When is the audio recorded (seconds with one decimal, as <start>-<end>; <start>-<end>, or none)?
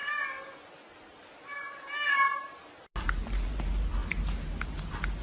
0.0-5.2